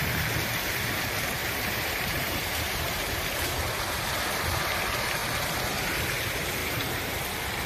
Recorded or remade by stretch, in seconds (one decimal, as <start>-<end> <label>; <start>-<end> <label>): 0.0-1.4 recorded; 1.4-3.8 remade; 3.8-6.6 recorded; 6.6-7.2 remade; 7.2-7.7 recorded